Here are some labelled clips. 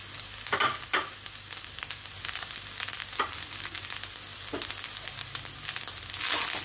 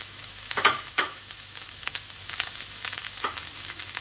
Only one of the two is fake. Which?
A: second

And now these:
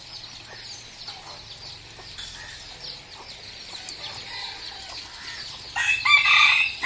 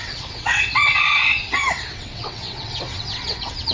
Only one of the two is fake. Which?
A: second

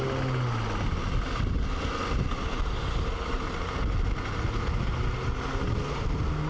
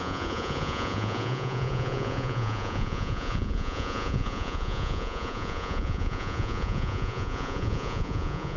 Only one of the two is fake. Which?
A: second